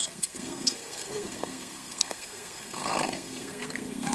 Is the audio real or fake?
fake